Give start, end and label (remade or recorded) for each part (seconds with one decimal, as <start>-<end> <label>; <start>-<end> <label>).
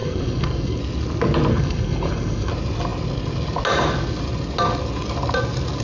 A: 0.0-0.8 remade; 0.8-1.5 recorded; 1.5-2.5 remade; 2.5-5.8 recorded